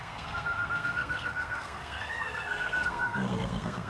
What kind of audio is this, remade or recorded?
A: remade